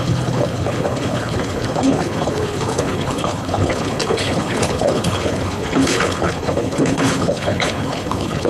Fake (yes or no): yes